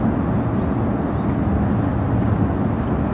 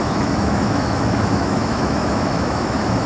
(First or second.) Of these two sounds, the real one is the first